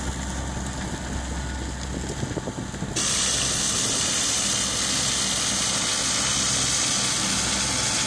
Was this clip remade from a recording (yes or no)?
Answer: no